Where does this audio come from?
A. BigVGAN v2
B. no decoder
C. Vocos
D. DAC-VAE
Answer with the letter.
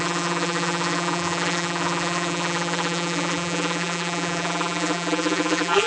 A